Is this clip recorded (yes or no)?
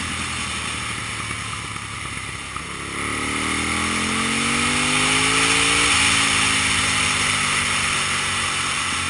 yes